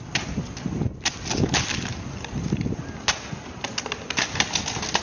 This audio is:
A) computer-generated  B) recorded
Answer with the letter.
B